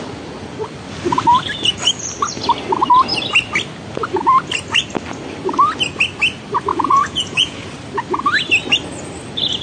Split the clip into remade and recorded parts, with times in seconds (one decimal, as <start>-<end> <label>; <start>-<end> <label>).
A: 0.0-6.7 recorded; 6.7-7.7 remade; 7.7-9.6 recorded